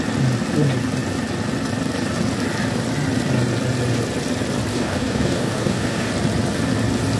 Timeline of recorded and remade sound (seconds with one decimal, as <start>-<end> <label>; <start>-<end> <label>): 0.0-4.7 recorded; 4.7-6.1 remade; 6.1-7.2 recorded